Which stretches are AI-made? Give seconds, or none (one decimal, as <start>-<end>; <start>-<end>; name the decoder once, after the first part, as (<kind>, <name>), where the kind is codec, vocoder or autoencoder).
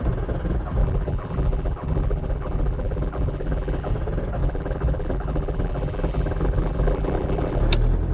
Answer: 0.8-3.9 (vocoder, BigVGAN v2); 4.4-7.6